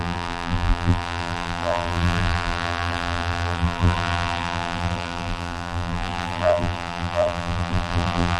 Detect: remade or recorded remade